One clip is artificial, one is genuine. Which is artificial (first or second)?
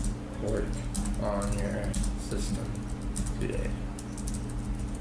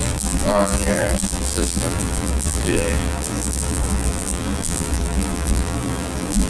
second